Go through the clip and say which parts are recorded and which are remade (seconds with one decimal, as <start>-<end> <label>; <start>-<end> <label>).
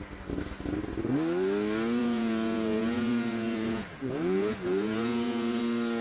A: 0.0-2.0 recorded; 2.0-5.6 remade; 5.6-6.0 recorded